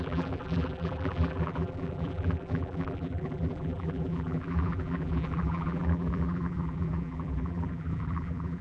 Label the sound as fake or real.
fake